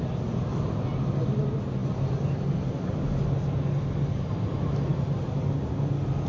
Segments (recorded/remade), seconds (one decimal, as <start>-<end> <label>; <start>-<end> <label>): 0.0-6.3 recorded